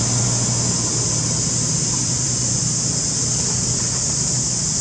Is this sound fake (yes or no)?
no